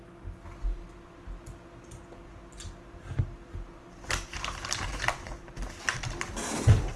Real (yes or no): yes